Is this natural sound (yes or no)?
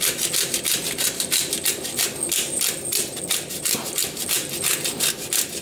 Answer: yes